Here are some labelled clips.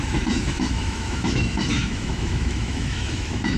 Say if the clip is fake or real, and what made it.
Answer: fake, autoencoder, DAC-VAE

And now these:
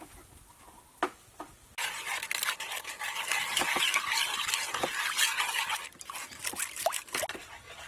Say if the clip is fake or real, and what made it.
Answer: real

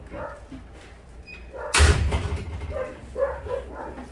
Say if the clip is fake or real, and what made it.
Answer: real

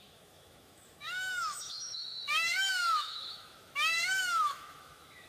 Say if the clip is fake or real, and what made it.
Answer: fake, autoencoder, DAC-VAE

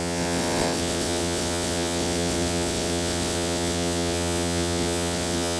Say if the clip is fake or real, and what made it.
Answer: fake, vocoder, WaveNeXt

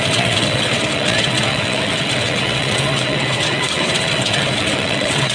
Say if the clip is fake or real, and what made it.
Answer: fake, vocoder, WaveNeXt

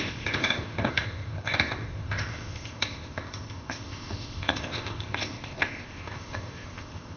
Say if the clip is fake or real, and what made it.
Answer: fake, codec, ZipCodec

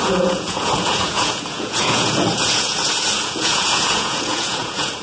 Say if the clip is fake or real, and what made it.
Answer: fake, vocoder, Vocos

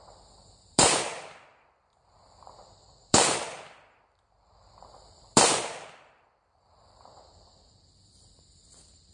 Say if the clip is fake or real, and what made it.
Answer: fake, vocoder, BigVGAN v2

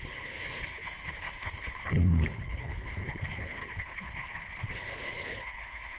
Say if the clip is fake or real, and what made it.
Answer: fake, codec, HILCodec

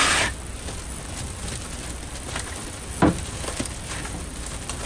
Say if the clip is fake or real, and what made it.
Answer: real